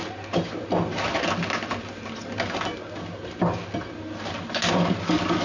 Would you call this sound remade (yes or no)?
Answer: no